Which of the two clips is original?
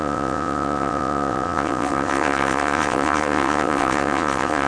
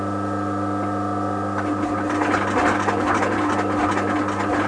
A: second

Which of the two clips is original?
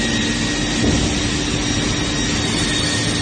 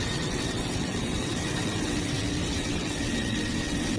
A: first